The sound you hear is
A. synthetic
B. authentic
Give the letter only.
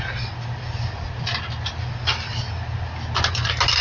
B